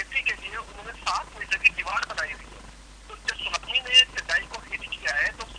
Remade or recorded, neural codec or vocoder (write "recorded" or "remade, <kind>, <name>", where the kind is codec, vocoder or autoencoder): recorded